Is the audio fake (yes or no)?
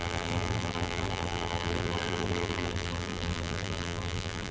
yes